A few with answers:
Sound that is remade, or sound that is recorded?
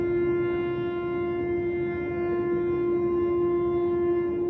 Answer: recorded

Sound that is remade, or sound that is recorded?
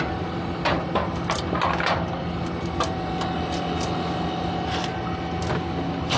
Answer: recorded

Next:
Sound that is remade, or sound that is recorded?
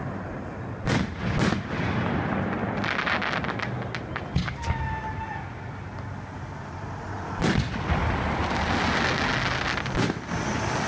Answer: recorded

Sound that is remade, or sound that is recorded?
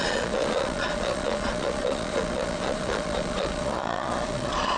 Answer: remade